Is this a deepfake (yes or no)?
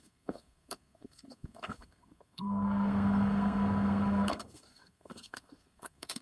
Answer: yes